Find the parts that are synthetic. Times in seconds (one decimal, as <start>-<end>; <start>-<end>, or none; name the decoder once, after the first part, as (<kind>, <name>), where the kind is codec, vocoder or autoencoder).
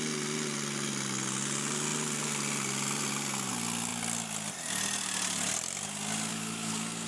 6.3-7.1 (codec, DAC)